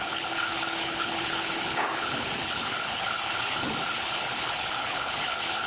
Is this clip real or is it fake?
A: fake